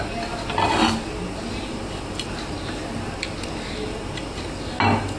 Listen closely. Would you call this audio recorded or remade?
recorded